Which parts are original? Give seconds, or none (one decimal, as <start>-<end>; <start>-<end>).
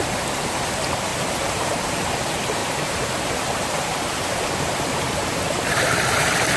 0.0-1.1; 2.2-2.6; 5.4-6.6